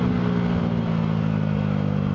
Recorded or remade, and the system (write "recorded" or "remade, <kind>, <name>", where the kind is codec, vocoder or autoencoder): recorded